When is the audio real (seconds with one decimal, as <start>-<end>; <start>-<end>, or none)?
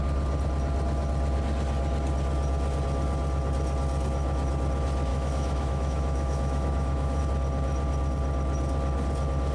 0.0-5.1; 7.2-9.5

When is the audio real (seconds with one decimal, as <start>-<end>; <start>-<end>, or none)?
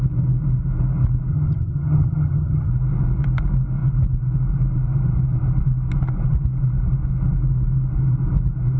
0.0-1.3; 2.7-8.8